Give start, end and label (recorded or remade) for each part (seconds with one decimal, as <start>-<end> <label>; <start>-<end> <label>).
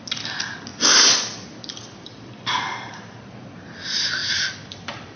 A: 0.0-0.7 recorded; 0.7-2.5 remade; 2.5-4.2 recorded; 4.2-5.2 remade